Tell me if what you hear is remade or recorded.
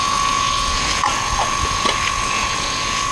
remade